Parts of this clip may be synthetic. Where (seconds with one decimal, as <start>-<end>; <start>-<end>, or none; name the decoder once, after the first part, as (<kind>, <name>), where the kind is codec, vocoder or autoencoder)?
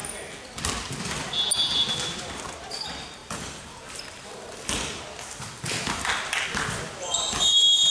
none